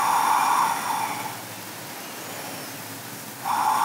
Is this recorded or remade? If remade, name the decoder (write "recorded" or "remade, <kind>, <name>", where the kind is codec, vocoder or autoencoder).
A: recorded